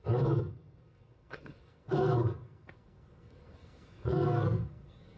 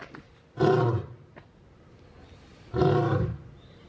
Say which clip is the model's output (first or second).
first